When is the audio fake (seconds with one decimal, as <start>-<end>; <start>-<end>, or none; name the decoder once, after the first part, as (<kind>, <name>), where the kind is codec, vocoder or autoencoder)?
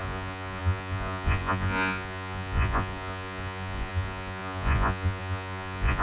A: 0.0-6.0 (vocoder, Vocos)